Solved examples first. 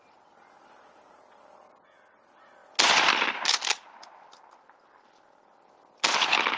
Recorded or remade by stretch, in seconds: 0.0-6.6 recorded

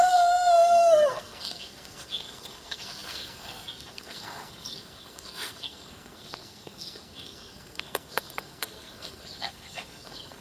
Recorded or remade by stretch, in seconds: 0.0-10.4 remade

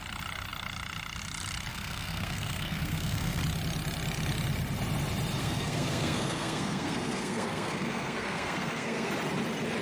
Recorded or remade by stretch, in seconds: 0.0-1.7 recorded; 1.7-3.4 remade; 3.4-5.4 recorded; 5.4-9.1 remade; 9.1-9.8 recorded